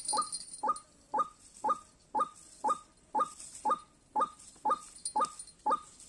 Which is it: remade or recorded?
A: recorded